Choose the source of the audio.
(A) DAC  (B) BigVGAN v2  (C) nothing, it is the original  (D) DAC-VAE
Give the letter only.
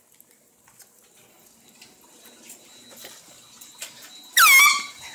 C